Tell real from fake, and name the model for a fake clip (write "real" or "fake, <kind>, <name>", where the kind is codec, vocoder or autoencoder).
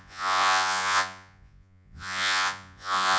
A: fake, vocoder, Vocos